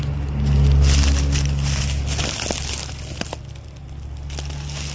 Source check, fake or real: real